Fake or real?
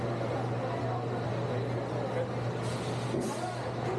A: real